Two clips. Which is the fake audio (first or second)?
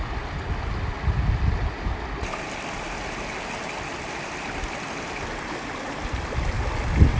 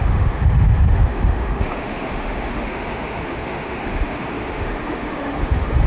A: second